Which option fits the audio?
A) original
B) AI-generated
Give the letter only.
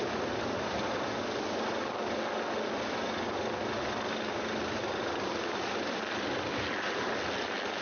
A